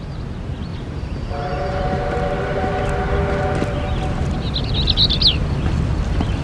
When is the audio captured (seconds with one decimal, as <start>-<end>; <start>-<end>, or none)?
0.0-0.7; 2.8-6.4